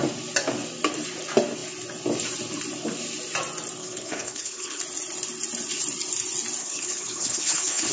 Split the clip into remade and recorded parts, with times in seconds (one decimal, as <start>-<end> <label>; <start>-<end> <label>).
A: 0.0-3.8 recorded; 3.8-4.8 remade; 4.8-6.6 recorded; 6.6-7.9 remade

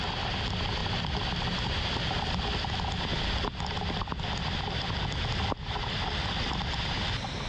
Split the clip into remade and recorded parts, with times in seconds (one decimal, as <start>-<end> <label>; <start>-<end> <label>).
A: 0.0-0.8 recorded; 0.8-1.8 remade; 1.8-7.5 recorded

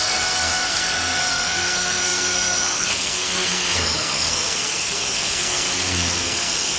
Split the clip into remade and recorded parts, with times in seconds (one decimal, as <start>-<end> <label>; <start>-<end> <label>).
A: 0.0-6.8 remade

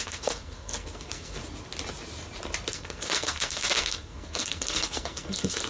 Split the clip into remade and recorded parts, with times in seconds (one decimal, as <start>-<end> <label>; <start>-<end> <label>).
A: 0.0-1.4 remade; 1.4-2.7 recorded; 2.7-5.7 remade

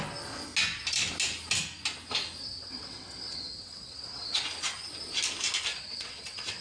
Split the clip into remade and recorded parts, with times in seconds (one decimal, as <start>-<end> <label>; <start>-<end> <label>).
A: 0.0-2.4 recorded; 2.4-4.4 remade; 4.4-5.7 recorded; 5.7-6.6 remade

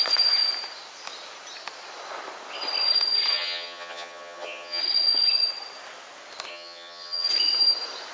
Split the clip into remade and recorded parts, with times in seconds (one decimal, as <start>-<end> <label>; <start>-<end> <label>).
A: 0.0-3.3 recorded; 3.3-4.8 remade; 4.8-6.5 recorded; 6.5-7.3 remade; 7.3-8.1 recorded

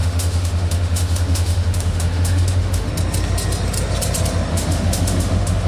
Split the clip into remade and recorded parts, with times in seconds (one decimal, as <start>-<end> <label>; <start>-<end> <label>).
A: 0.0-2.9 remade; 2.9-4.5 recorded; 4.5-5.7 remade

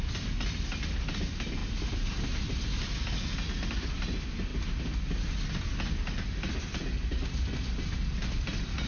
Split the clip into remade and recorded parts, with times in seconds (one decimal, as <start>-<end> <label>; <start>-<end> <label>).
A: 0.0-8.9 recorded